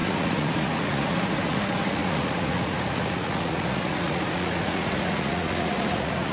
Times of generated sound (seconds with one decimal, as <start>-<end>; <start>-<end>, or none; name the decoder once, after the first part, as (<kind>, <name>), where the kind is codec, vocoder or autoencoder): 0.0-6.3 (vocoder, Vocos)